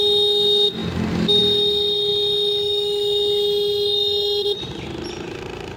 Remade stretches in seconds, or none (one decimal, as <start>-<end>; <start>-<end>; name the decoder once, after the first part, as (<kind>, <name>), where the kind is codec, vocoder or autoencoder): none